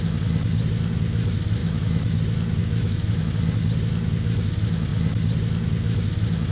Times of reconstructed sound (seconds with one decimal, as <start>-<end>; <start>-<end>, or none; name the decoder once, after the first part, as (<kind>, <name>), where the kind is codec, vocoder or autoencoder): 1.6-2.2 (autoencoder, DAC-VAE); 2.6-3.2